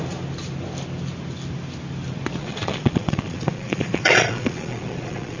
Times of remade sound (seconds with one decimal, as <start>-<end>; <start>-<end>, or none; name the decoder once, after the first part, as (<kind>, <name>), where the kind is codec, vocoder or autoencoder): 2.4-5.4 (vocoder, Vocos)